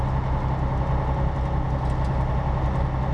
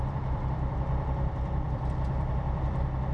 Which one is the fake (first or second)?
second